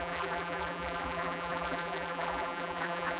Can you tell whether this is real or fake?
fake